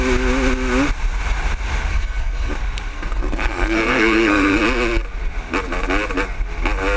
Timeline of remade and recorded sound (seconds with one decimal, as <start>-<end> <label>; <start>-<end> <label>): 0.0-1.9 recorded; 1.9-2.5 remade; 2.5-2.9 recorded; 2.9-4.6 remade; 4.6-7.0 recorded